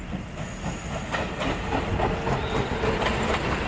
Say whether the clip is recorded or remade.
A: recorded